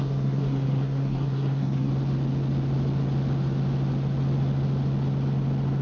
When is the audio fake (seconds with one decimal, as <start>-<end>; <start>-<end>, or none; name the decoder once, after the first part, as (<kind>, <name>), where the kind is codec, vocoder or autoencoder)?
0.0-1.9 (codec, SNAC)